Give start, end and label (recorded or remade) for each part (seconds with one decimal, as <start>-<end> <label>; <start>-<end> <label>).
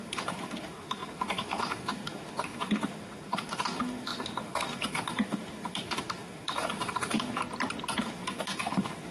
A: 0.0-7.4 remade; 7.4-8.0 recorded; 8.0-9.1 remade